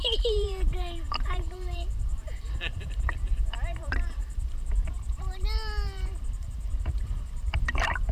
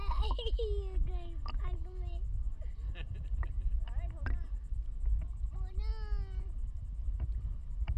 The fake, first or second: first